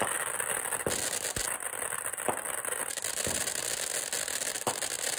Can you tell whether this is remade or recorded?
recorded